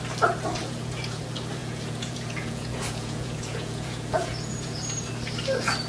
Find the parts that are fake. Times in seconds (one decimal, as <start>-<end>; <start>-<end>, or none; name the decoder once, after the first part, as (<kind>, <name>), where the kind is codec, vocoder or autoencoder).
0.6-1.2 (vocoder, Vocos); 1.6-5.1